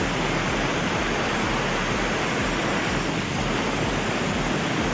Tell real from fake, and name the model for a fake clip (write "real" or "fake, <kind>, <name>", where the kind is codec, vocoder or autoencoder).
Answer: real